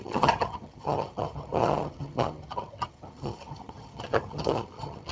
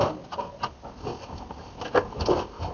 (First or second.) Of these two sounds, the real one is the second